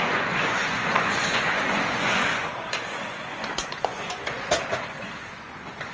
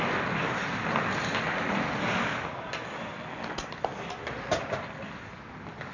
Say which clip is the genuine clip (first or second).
second